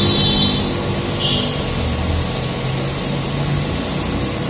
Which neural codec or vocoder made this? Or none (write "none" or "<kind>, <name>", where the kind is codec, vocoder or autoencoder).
none